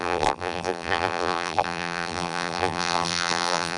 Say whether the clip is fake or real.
fake